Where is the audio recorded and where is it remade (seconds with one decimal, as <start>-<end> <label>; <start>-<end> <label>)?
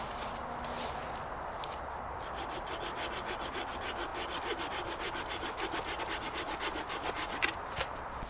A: 0.0-8.3 recorded